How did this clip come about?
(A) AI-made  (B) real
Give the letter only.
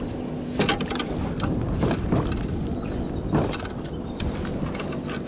B